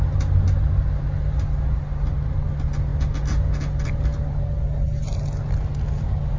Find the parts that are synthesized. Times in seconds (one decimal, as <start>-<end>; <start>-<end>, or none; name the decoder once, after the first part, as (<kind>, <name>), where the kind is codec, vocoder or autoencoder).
none